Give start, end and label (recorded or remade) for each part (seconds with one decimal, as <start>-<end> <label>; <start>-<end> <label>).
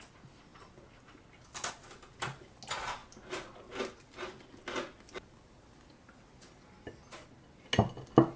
0.0-8.4 recorded